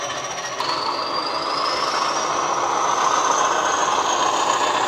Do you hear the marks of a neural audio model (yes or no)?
no